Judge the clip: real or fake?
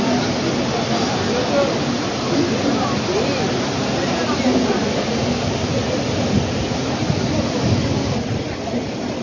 real